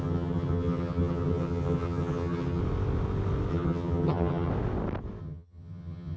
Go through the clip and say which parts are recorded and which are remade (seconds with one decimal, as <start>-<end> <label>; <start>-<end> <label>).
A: 0.0-2.6 remade; 2.6-3.5 recorded; 3.5-4.5 remade; 4.5-5.2 recorded; 5.2-6.2 remade

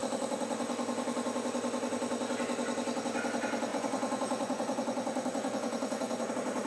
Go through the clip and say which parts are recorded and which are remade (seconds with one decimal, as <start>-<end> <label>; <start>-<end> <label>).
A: 0.0-3.7 recorded; 3.7-6.3 remade; 6.3-6.7 recorded

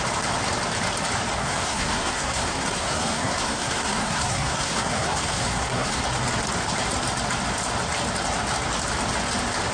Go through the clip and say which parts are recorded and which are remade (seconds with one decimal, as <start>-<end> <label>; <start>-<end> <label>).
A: 0.0-1.4 recorded; 1.4-6.0 remade; 6.0-9.7 recorded

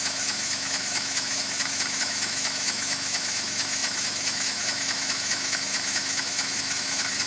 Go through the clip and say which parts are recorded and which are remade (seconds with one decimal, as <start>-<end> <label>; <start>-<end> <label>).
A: 0.0-7.3 remade

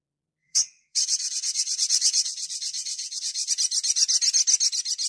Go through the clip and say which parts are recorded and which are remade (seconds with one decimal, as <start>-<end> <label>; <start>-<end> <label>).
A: 0.0-0.4 recorded; 0.4-3.5 remade; 3.5-5.1 recorded